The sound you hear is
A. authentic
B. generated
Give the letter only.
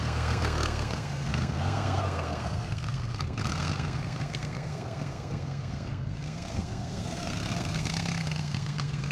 B